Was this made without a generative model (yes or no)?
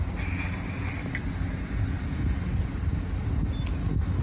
yes